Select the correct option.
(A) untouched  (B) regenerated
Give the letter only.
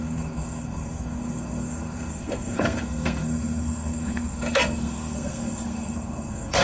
B